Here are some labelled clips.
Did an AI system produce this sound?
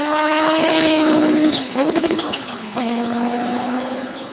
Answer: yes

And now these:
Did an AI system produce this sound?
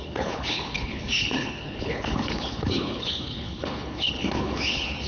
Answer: yes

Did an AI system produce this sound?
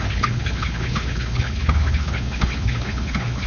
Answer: yes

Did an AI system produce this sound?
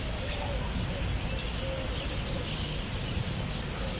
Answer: no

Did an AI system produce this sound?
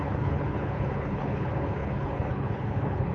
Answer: yes